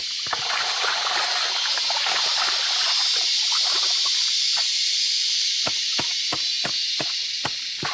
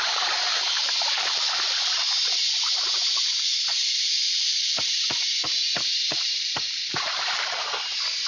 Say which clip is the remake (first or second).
second